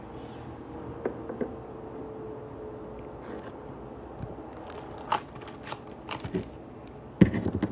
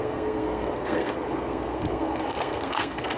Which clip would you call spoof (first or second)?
second